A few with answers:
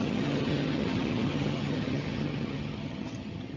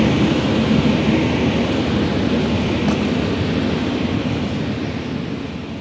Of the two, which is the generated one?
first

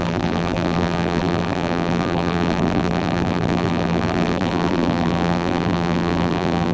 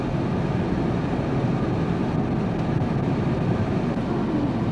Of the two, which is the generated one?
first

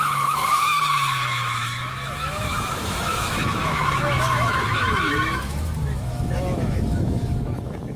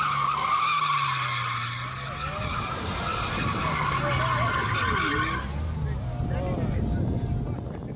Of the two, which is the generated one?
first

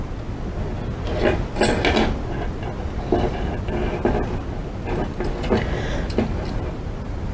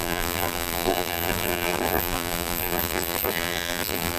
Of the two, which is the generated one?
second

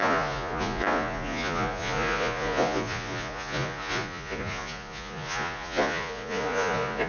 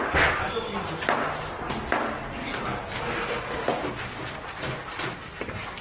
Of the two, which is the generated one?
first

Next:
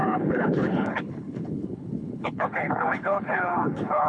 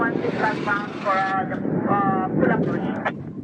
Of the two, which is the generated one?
first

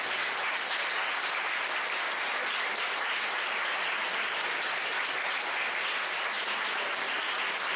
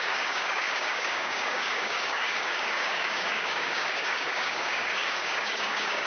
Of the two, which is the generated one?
second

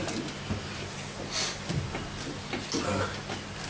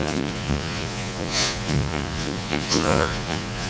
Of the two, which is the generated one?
second